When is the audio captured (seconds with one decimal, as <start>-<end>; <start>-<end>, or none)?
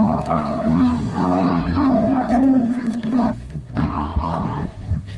none